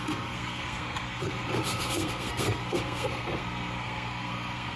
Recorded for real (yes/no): no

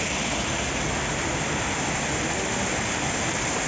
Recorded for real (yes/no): yes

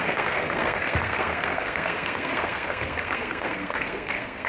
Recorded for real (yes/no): no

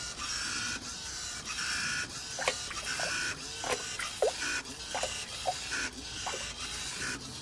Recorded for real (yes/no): yes